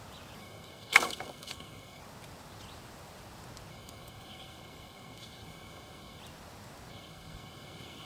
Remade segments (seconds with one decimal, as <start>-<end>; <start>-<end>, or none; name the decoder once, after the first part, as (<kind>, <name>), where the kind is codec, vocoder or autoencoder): 0.4-2.0 (codec, SNAC); 3.7-6.2; 6.9-8.1